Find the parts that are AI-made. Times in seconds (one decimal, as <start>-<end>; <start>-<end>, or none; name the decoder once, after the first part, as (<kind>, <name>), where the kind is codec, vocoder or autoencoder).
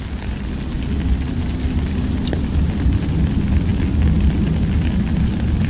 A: none